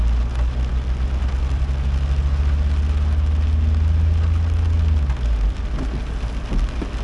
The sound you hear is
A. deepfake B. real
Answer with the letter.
B